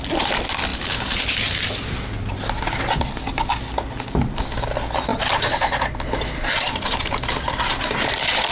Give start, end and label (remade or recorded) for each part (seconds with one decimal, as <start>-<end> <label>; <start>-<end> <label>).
0.0-0.7 recorded; 0.7-2.8 remade; 2.8-5.1 recorded; 5.1-8.1 remade; 8.1-8.5 recorded